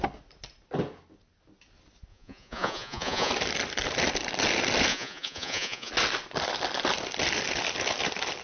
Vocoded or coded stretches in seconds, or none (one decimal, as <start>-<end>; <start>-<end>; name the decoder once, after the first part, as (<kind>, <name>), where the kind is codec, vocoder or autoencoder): 2.1-3.3 (vocoder, Vocos); 4.9-5.9

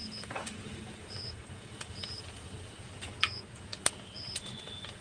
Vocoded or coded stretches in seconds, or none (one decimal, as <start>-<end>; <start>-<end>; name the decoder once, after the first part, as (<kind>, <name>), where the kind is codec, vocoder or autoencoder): 0.0-5.0 (vocoder, Vocos)